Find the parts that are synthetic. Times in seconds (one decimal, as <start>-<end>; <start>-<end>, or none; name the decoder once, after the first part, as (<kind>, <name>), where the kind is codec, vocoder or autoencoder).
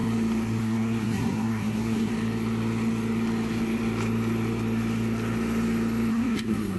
0.6-2.1 (codec, SNAC); 6.1-6.8